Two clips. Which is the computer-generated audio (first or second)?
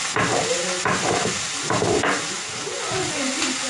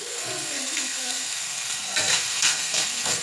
second